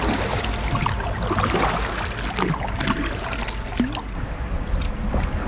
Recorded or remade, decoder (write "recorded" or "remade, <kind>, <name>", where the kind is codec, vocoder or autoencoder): recorded